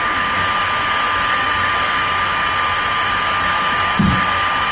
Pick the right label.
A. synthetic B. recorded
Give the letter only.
B